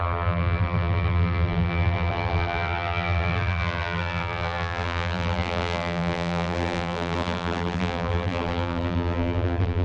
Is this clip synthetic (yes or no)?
yes